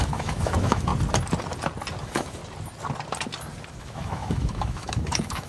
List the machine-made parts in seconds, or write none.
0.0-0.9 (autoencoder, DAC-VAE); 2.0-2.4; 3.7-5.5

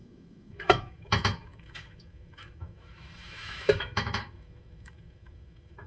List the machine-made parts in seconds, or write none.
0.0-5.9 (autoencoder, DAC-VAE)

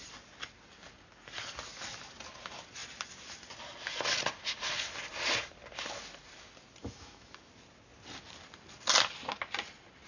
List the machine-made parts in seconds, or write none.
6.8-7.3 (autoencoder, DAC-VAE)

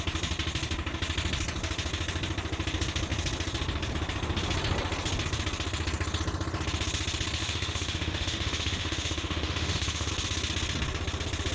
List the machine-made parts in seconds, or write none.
7.4-10.1 (autoencoder, DAC-VAE)